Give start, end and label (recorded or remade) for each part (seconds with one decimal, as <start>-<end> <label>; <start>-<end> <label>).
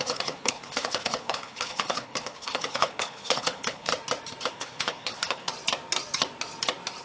0.0-3.9 remade; 3.9-4.5 recorded; 4.5-5.5 remade; 5.5-7.0 recorded